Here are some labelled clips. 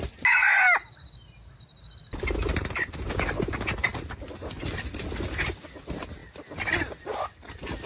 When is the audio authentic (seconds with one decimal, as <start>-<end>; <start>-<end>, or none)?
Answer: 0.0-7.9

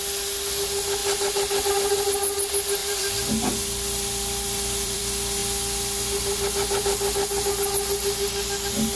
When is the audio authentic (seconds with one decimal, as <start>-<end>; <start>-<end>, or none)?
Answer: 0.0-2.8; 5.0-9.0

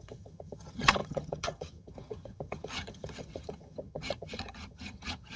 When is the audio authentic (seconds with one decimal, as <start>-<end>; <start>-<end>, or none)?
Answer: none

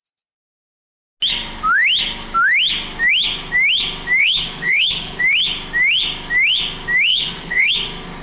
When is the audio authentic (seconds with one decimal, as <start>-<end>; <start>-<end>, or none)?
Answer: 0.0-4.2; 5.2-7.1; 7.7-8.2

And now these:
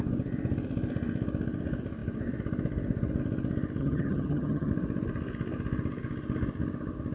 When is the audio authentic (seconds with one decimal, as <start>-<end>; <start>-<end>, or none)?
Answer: 0.0-3.8; 4.7-7.1

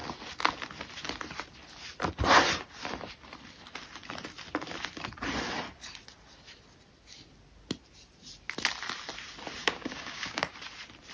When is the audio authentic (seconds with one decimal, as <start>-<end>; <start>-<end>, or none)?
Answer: 0.0-9.6; 10.5-11.1

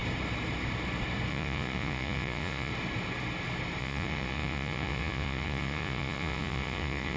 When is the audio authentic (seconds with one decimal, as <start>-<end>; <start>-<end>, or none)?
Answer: 0.0-1.3; 2.7-3.8